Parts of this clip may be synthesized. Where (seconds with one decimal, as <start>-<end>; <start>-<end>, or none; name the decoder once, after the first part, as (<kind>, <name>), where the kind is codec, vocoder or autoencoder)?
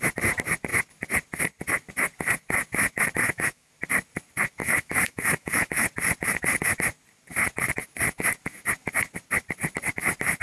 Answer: 3.2-3.7 (autoencoder, DAC-VAE); 4.6-5.7